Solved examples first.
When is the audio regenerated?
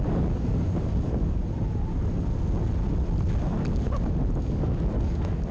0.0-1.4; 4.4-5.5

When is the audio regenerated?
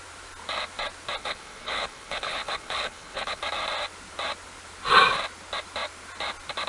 1.2-3.4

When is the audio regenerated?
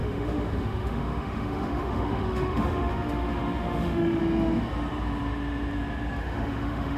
0.0-4.2; 6.2-7.0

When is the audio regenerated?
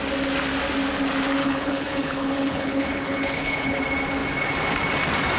1.4-3.8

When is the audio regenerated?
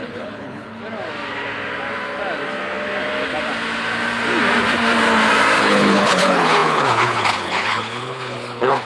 0.0-0.8; 5.6-8.9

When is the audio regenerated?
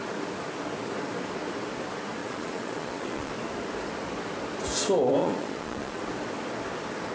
2.2-3.3; 5.2-6.0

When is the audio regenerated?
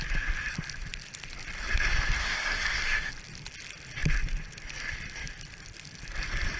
2.2-3.1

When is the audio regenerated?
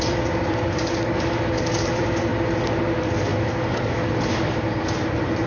0.0-2.3; 2.8-3.3; 5.0-5.5